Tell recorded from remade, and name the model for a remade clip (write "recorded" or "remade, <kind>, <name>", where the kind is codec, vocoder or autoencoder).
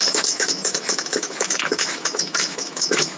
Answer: remade, autoencoder, DAC-VAE